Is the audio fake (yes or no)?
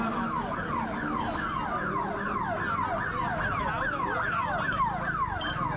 no